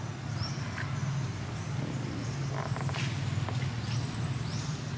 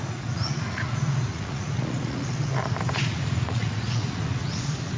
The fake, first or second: second